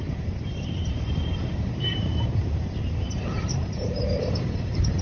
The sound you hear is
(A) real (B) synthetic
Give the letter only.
B